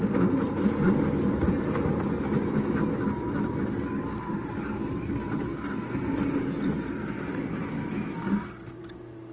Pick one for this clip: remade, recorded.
recorded